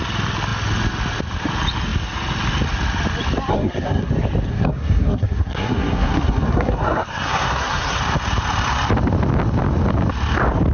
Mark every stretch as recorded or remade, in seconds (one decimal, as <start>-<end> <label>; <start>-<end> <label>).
0.0-3.5 recorded; 3.5-4.1 remade; 4.1-4.5 recorded; 4.5-8.0 remade; 8.0-10.7 recorded